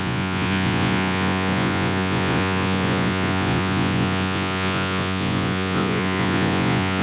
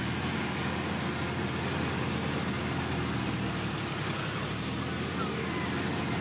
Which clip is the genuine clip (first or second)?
second